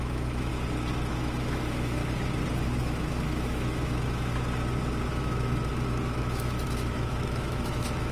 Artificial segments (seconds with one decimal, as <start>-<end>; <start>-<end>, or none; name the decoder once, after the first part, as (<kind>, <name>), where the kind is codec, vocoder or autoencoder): 0.0-0.5 (autoencoder, DAC-VAE); 1.1-2.0; 2.8-4.3; 5.1-8.1